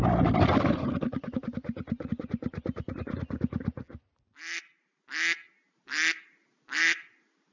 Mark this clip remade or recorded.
recorded